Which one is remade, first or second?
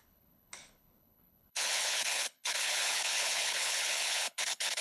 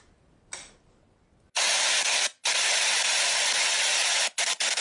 first